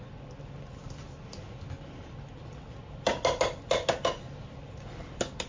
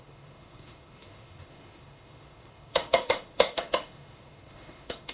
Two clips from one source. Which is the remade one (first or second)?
second